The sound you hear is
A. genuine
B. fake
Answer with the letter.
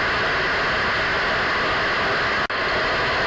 A